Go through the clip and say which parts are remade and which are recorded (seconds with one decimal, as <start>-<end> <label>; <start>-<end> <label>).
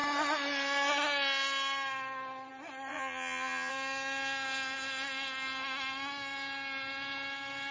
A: 0.0-2.9 recorded; 2.9-3.7 remade; 3.7-7.7 recorded